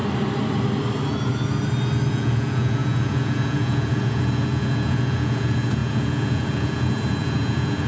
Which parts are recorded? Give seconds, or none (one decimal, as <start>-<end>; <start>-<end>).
0.0-2.1

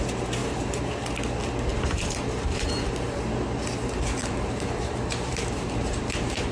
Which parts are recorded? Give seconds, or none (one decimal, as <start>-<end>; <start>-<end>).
0.0-0.4; 1.0-1.7; 3.2-4.2

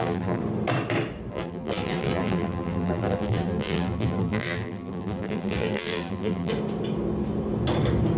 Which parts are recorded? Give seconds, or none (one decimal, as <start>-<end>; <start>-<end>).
0.4-1.3; 6.5-8.2

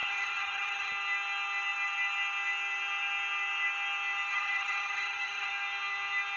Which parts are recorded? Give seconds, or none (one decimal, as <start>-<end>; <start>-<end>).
0.9-4.3; 5.5-6.4

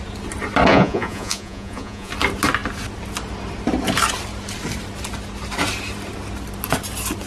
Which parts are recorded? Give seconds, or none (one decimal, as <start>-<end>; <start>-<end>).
0.0-0.7; 2.1-7.3

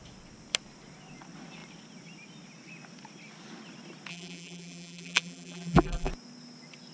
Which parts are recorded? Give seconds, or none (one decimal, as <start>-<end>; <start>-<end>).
0.0-4.1; 6.1-6.9